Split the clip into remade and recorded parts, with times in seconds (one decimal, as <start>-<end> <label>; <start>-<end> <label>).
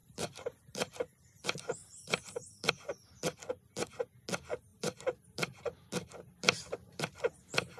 0.0-1.0 remade; 1.0-1.8 recorded; 1.8-2.7 remade; 2.7-4.7 recorded; 4.7-7.3 remade; 7.3-7.8 recorded